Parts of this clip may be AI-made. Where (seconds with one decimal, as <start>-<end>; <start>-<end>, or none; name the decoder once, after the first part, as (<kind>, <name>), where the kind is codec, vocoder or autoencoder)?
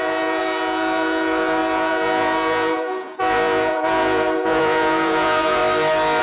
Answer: 0.0-5.6 (vocoder, Vocos)